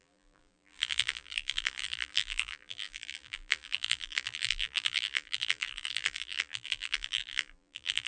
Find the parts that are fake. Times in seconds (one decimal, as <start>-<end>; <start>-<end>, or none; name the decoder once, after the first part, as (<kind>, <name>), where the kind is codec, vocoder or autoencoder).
0.0-8.1 (vocoder, BigVGAN v2)